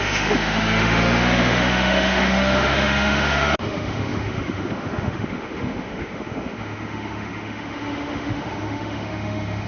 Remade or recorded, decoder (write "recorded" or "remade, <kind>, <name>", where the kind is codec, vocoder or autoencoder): remade, autoencoder, DAC-VAE